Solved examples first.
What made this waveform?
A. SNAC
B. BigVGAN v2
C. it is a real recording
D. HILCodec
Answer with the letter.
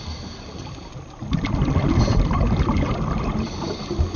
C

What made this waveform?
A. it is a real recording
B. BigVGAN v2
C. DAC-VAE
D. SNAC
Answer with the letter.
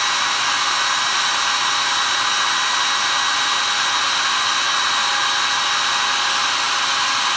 A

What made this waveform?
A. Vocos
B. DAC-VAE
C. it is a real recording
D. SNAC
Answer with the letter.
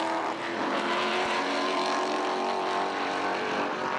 C